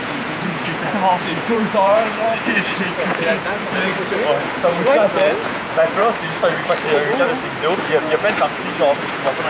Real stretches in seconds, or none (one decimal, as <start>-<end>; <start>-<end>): 3.9-4.4; 6.0-8.0